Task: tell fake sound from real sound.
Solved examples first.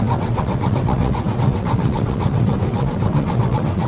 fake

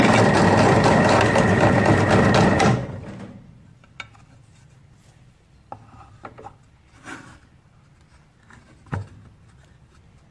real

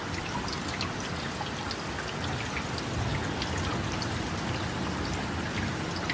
real